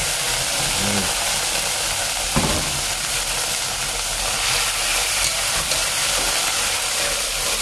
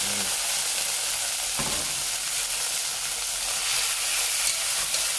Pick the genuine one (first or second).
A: second